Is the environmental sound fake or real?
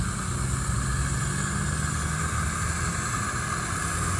real